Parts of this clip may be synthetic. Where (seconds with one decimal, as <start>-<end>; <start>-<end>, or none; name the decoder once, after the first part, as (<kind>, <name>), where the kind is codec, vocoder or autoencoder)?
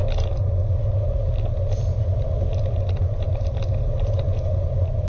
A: none